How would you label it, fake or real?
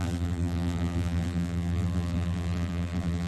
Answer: fake